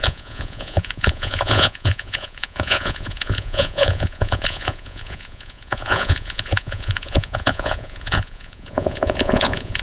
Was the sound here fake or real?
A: fake